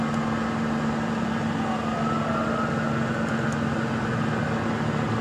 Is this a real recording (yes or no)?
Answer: yes